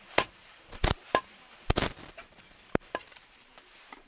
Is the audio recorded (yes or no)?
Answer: no